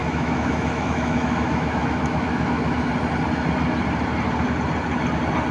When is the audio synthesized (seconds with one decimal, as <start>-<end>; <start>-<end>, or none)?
0.0-2.9